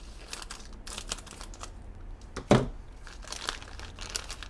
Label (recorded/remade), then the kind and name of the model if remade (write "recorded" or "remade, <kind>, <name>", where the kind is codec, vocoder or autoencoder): recorded